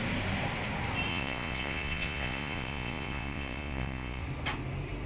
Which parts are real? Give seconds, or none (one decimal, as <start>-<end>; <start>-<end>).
0.0-1.1; 4.2-5.1